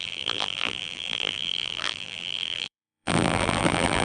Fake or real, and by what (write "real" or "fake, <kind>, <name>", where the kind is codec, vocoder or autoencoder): fake, vocoder, BigVGAN v2